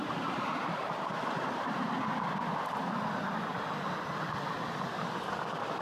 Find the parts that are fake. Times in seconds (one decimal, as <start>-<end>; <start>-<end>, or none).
0.0-3.1